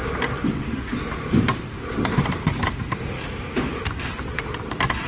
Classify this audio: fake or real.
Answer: real